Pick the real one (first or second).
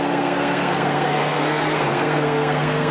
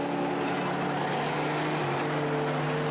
second